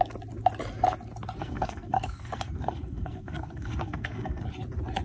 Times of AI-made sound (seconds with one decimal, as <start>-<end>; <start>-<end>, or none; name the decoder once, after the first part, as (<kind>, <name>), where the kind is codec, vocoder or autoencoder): 1.4-4.4 (codec, SNAC)